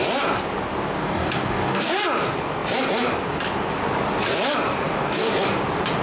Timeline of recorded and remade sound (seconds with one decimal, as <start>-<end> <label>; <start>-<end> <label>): 0.0-1.0 recorded; 1.0-1.9 remade; 1.9-4.8 recorded; 4.8-5.3 remade; 5.3-6.0 recorded